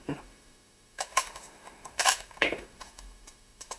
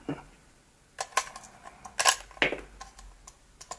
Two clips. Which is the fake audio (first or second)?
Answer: first